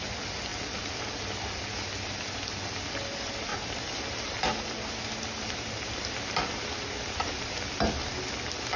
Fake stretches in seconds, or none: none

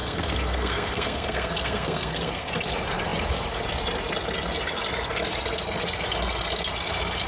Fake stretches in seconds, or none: 0.0-2.5 (codec, SNAC)

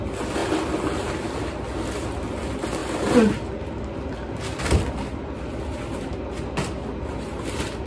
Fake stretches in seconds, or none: none

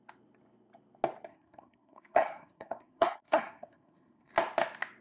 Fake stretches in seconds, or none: 1.3-4.3 (codec, SNAC)

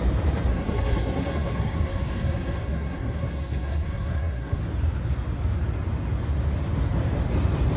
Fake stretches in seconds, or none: 0.5-4.6 (codec, SNAC)

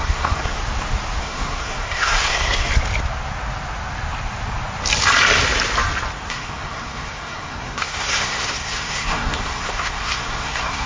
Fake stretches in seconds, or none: 0.0-0.6 (codec, SNAC); 1.2-2.7; 6.3-10.9

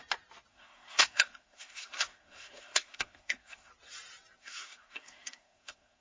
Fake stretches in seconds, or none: 0.5-3.7 (codec, SNAC); 4.4-6.0